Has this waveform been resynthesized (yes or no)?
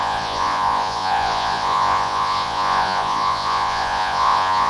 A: yes